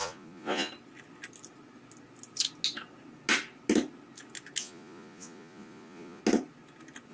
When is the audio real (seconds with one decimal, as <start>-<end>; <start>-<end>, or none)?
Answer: 0.7-4.6; 6.2-7.1